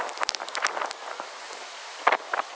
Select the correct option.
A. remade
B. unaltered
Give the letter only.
B